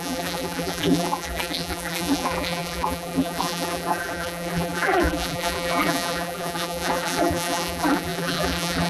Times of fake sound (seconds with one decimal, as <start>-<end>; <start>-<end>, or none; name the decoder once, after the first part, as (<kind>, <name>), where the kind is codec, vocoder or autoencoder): 0.0-8.9 (vocoder, BigVGAN v2)